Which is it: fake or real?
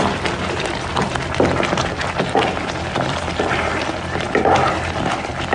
fake